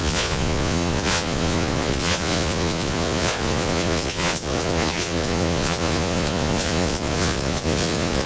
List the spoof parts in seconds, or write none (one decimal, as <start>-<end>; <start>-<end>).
0.0-8.3